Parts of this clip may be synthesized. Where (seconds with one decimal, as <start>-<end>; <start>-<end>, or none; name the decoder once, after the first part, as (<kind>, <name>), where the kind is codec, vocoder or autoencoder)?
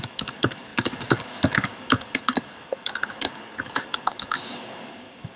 0.0-5.4 (codec, DAC)